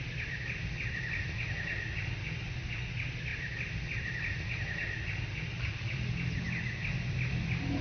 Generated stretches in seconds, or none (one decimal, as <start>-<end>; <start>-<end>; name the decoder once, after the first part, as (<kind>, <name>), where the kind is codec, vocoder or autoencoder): none